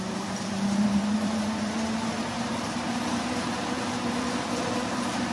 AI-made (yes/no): yes